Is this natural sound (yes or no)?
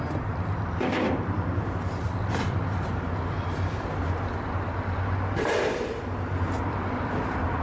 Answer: no